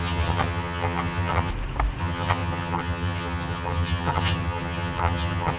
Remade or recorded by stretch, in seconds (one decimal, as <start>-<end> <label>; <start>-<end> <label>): 0.0-1.5 remade; 1.5-2.0 recorded; 2.0-5.6 remade